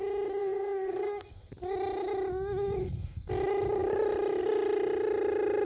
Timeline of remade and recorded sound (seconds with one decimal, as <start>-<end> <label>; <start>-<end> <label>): 0.0-0.4 recorded; 0.4-1.5 remade; 1.5-2.8 recorded; 2.8-3.3 remade; 3.3-5.6 recorded